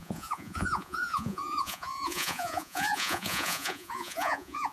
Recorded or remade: remade